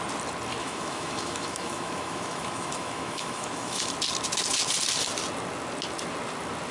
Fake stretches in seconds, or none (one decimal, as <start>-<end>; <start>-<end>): 0.6-3.9